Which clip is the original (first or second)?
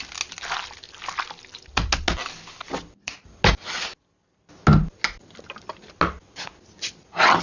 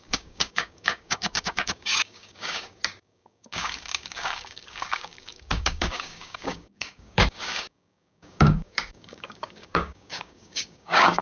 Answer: first